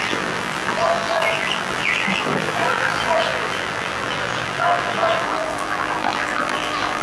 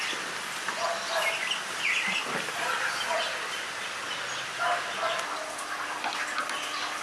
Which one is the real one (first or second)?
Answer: second